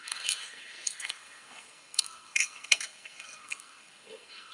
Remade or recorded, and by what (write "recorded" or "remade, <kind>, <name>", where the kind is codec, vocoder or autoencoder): remade, codec, SNAC